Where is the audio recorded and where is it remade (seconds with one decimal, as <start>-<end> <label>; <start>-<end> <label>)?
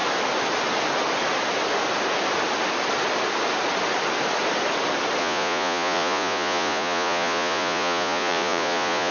0.0-5.2 recorded; 5.2-9.1 remade